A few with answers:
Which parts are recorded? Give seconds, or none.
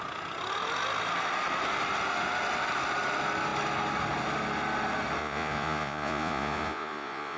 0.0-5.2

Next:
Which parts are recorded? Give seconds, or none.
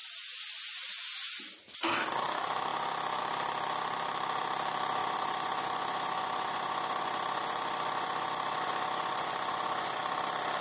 0.0-5.0; 10.0-10.6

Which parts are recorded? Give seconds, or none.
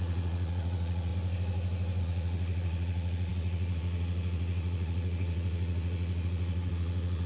1.1-2.0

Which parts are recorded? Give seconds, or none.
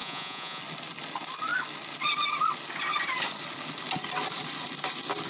0.6-5.3